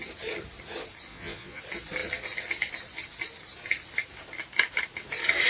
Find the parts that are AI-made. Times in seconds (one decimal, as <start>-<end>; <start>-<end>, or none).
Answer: 1.1-1.6